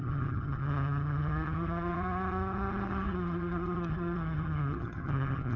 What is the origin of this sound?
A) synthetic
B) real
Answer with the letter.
A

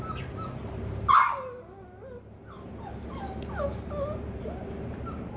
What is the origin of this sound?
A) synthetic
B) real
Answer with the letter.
B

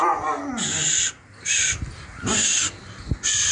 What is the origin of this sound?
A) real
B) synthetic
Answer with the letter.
A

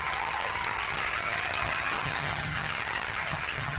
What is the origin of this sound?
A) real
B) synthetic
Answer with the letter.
B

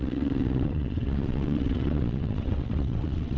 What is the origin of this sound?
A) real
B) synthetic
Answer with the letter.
B